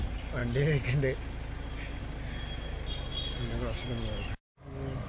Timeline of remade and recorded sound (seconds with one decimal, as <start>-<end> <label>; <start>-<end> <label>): 0.0-5.1 recorded